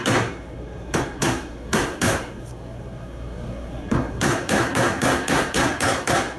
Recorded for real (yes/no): no